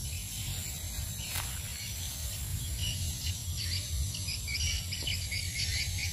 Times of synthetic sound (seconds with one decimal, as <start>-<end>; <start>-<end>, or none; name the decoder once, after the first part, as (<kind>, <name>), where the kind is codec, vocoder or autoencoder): 2.5-3.3 (vocoder, BigVGAN v2)